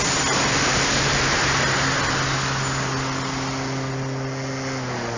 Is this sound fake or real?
real